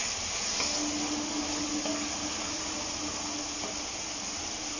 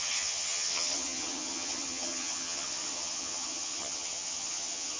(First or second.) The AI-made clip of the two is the second